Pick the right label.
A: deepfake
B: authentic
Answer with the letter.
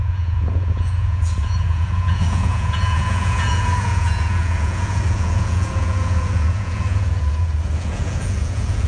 A